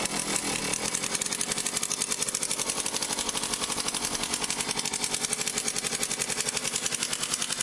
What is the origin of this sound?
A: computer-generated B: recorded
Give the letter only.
B